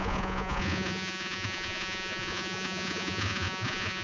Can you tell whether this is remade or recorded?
remade